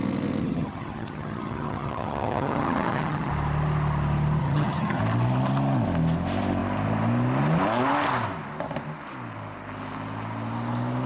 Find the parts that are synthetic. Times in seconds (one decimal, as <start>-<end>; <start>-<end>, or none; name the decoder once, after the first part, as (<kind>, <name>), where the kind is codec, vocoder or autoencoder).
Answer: 0.4-3.3 (vocoder, HiFi-GAN); 4.4-5.0